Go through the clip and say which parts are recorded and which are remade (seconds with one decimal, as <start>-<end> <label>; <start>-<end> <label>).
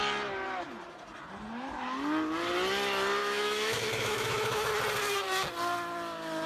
0.0-3.2 recorded; 3.2-4.7 remade; 4.7-6.5 recorded